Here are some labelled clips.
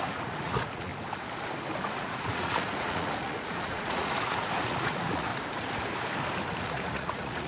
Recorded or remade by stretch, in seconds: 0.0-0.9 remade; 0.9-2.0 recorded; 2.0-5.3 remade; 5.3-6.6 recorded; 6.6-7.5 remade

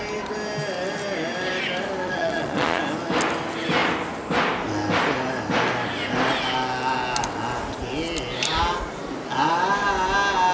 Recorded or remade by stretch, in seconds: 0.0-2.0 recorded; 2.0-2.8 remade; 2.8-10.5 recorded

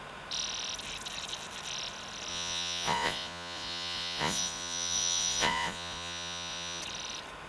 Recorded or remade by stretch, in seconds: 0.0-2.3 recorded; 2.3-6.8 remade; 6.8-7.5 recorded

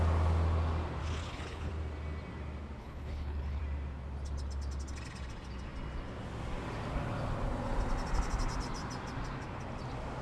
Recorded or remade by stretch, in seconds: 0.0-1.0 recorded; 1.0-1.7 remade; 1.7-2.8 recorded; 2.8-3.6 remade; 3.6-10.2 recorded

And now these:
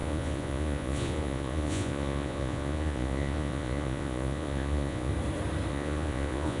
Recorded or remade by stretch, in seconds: 0.0-5.1 remade; 5.1-5.7 recorded; 5.7-6.6 remade

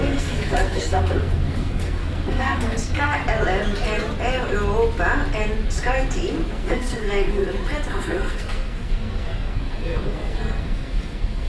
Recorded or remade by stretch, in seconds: 0.0-3.2 remade; 3.2-6.5 recorded; 6.5-7.4 remade; 7.4-7.9 recorded; 7.9-11.5 remade